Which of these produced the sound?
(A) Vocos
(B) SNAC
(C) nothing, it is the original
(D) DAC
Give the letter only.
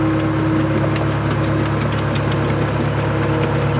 C